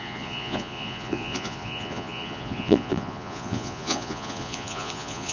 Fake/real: fake